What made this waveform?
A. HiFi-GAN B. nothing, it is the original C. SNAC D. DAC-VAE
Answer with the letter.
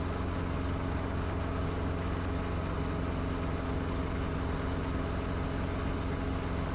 B